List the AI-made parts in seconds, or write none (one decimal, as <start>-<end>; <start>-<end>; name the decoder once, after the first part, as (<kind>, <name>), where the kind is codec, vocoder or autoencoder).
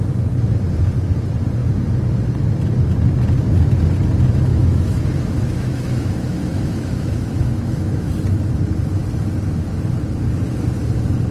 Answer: 4.5-8.1 (autoencoder, DAC-VAE)